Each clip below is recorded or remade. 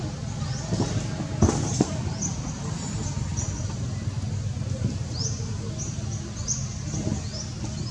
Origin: recorded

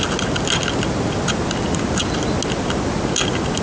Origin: recorded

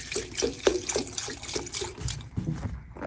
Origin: recorded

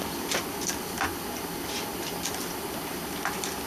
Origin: recorded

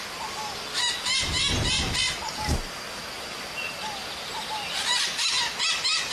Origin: recorded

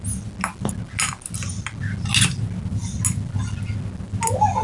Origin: recorded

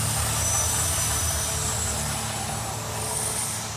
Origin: recorded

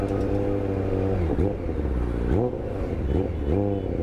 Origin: recorded